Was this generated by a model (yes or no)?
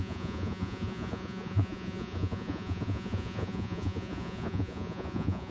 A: yes